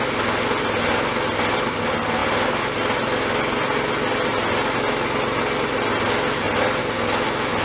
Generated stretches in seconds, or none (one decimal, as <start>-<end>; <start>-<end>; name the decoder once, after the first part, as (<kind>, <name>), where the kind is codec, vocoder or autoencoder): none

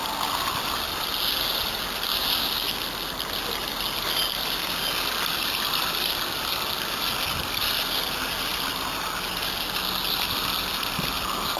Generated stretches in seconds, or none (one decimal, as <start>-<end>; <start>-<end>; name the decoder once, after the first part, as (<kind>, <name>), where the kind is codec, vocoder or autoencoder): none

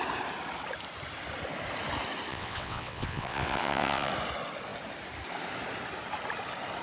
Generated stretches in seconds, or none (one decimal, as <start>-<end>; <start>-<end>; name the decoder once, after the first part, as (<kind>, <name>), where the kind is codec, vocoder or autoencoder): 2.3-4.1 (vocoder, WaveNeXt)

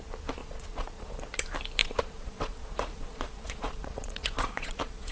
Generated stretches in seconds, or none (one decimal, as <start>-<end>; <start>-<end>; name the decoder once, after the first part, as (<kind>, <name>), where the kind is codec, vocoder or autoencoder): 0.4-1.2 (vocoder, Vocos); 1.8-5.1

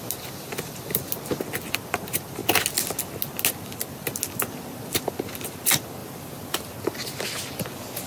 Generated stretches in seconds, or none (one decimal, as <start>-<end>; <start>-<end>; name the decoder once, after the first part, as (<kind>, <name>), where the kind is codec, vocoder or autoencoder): 6.0-6.7 (vocoder, BigVGAN v2)